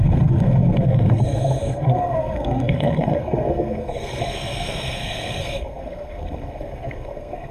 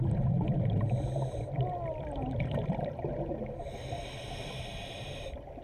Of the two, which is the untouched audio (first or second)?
second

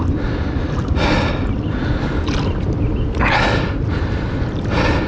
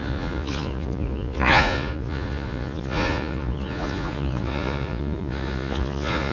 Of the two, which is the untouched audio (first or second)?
first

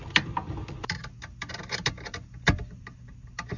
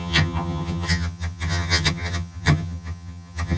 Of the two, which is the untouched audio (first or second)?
first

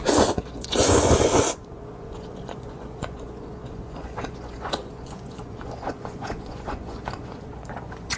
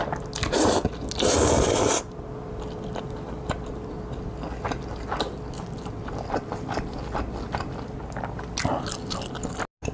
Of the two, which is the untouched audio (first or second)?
second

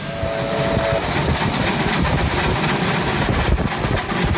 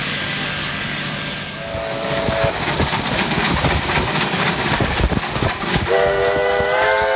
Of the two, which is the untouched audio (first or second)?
first